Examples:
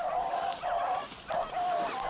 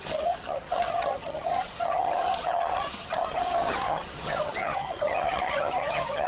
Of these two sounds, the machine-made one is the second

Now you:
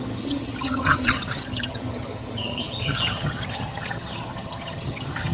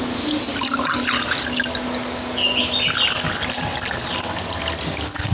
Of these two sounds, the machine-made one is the first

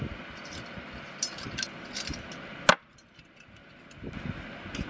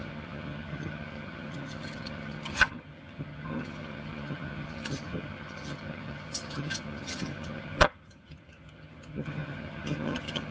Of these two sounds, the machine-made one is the second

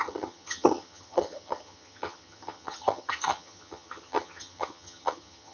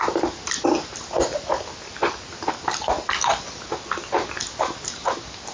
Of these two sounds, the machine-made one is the first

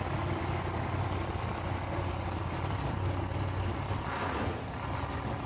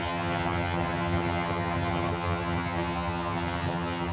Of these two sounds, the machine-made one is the second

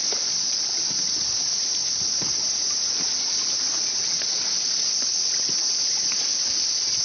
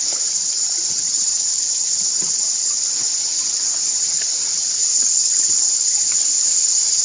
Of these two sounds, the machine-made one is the second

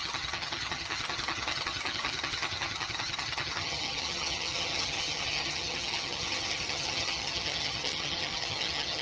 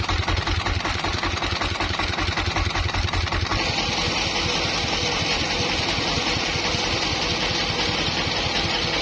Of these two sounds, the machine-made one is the first